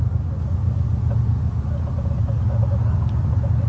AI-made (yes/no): no